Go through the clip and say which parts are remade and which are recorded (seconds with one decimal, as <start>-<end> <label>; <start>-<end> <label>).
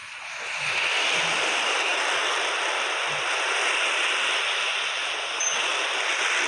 0.0-0.7 recorded; 0.7-1.9 remade; 1.9-5.7 recorded; 5.7-6.5 remade